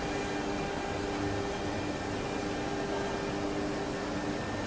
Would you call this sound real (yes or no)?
yes